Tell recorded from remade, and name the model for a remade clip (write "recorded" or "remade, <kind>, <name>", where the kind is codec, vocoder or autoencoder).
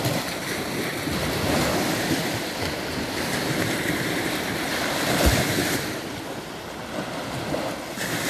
recorded